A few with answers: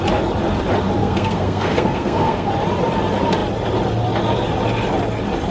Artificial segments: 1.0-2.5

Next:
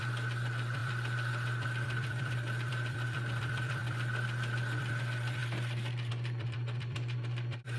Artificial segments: 0.0-7.8

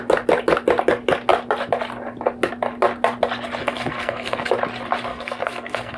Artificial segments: 3.6-4.5; 5.1-6.0

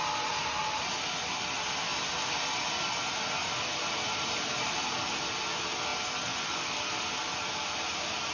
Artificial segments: 1.9-2.6; 3.4-5.4